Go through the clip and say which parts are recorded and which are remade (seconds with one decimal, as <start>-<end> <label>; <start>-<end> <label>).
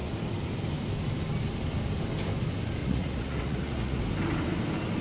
0.0-2.8 recorded; 2.8-4.0 remade; 4.0-5.0 recorded